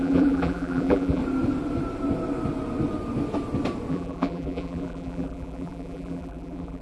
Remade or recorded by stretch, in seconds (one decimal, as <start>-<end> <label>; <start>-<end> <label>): 0.0-1.2 remade; 1.2-3.9 recorded; 3.9-6.8 remade